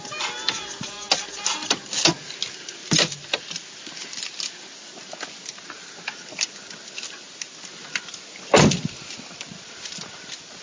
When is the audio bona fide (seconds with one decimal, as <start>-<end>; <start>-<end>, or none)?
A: 0.0-10.6